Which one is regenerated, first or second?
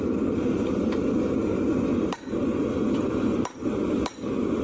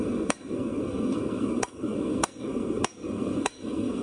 second